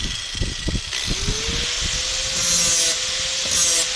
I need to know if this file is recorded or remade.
recorded